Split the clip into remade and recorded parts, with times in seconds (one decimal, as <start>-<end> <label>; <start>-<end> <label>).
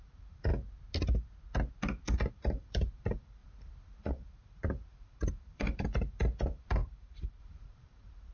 0.0-0.5 remade; 0.5-2.3 recorded; 2.3-3.4 remade; 3.4-4.1 recorded; 4.1-8.3 remade